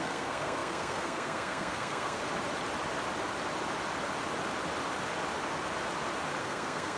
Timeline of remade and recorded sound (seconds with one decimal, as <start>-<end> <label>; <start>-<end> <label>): 0.0-2.2 remade; 2.2-6.4 recorded; 6.4-7.0 remade